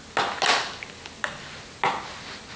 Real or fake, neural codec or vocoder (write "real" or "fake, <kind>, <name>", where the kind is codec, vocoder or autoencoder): real